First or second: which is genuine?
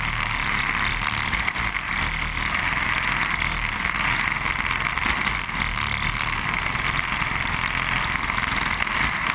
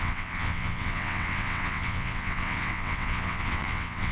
first